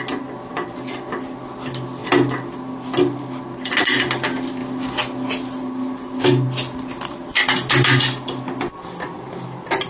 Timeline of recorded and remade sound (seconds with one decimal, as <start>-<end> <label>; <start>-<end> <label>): 0.0-9.9 recorded